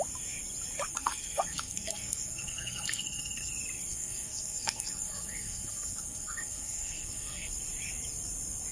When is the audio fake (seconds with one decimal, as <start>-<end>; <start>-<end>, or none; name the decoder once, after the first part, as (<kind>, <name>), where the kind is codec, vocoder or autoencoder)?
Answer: 0.9-3.5 (codec, SNAC); 3.9-7.5